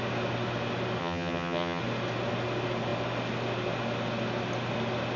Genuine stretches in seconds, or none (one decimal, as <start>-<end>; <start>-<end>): 0.0-1.0; 1.8-5.2